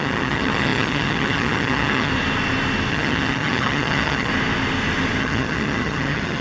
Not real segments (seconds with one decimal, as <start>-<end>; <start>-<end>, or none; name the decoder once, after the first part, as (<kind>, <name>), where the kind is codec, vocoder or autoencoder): 0.0-2.1 (vocoder, HiFi-GAN); 2.9-4.3; 5.2-6.4